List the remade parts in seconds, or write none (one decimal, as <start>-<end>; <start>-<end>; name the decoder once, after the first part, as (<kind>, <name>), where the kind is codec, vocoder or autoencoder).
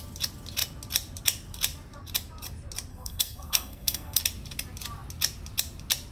2.9-4.2 (codec, SNAC)